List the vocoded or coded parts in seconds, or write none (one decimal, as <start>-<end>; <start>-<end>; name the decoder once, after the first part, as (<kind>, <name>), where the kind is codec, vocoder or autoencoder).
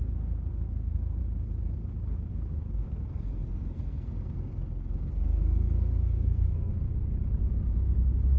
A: 0.0-1.2 (codec, SNAC); 2.3-6.7